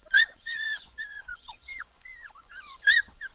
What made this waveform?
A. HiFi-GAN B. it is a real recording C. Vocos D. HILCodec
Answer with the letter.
C